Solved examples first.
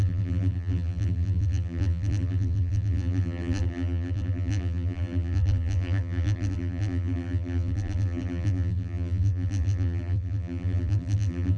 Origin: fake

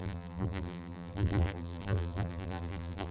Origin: fake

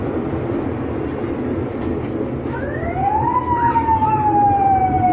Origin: real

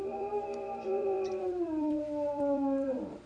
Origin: fake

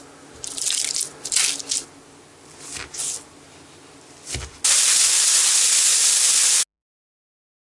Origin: real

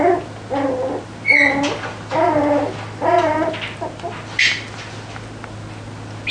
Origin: real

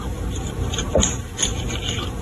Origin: real